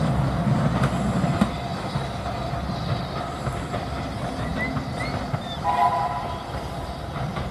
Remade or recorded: recorded